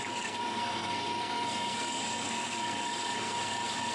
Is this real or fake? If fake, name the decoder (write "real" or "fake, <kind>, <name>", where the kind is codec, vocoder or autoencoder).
fake, codec, SNAC